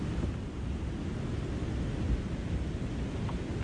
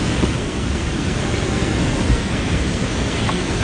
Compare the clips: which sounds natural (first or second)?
first